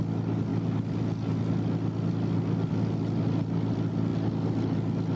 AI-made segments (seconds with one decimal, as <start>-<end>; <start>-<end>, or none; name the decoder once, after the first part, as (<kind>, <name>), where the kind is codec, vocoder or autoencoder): none

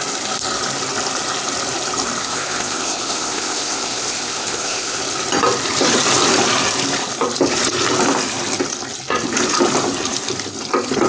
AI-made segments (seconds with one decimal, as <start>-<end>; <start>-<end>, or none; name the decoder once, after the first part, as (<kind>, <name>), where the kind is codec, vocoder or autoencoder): 2.2-5.0 (codec, ZipCodec)

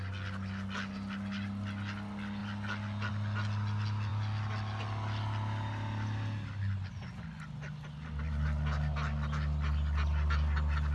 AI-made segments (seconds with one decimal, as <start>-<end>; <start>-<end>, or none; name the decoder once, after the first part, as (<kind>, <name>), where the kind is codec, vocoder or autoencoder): none